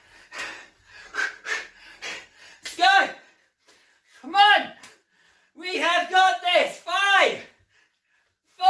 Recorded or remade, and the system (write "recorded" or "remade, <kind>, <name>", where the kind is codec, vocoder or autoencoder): recorded